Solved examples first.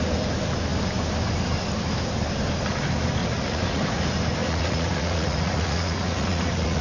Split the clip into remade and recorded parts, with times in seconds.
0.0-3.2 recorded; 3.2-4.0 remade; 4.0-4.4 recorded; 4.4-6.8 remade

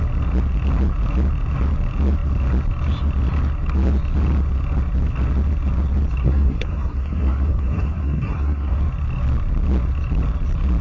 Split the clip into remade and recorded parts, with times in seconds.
0.0-6.2 recorded; 6.2-8.8 remade; 8.8-10.8 recorded

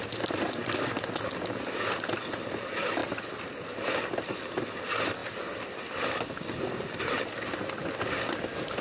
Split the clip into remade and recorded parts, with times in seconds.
0.0-8.8 recorded

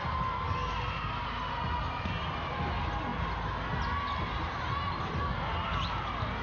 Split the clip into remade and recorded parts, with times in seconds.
0.0-6.4 recorded

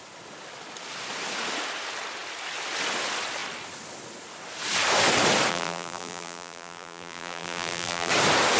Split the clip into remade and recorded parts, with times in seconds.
0.0-5.5 recorded; 5.5-8.1 remade; 8.1-8.6 recorded

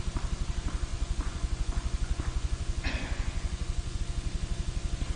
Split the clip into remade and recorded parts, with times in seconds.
0.0-0.9 recorded; 0.9-4.0 remade; 4.0-5.2 recorded

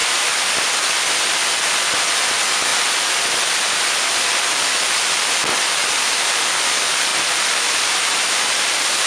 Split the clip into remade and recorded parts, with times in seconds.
0.0-2.1 remade; 2.1-2.7 recorded; 2.7-4.7 remade; 4.7-7.1 recorded; 7.1-9.1 remade